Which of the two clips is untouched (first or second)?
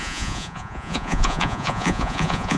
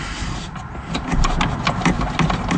second